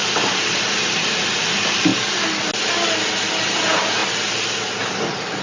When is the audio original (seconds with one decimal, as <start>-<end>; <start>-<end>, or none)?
1.4-5.4